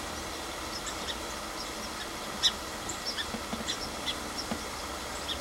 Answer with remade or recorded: recorded